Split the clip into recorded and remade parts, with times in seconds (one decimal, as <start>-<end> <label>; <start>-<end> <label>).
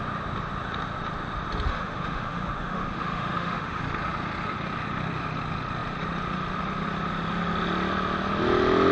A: 0.0-1.7 recorded; 1.7-3.8 remade; 3.8-8.9 recorded